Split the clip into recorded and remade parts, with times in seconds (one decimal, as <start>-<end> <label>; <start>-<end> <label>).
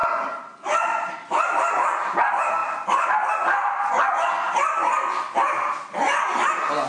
0.0-6.9 recorded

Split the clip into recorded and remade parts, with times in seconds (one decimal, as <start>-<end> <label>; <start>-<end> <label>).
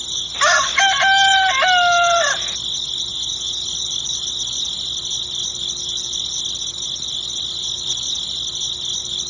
0.0-9.3 recorded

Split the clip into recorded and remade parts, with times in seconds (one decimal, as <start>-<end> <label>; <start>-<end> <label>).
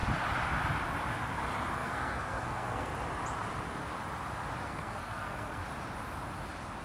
0.0-1.7 recorded; 1.7-2.9 remade; 2.9-4.6 recorded; 4.6-5.6 remade; 5.6-6.8 recorded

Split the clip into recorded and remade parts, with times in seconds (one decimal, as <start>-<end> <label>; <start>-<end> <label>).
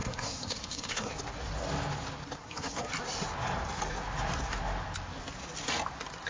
0.0-1.1 remade; 1.1-2.4 recorded; 2.4-2.9 remade; 2.9-6.3 recorded